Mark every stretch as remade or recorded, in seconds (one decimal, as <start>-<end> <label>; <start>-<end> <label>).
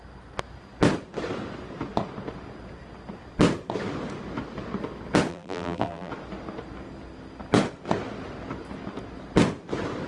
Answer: 0.0-5.3 recorded; 5.3-6.1 remade; 6.1-10.1 recorded